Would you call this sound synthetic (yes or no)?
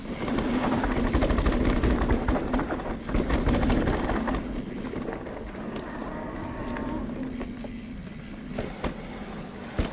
no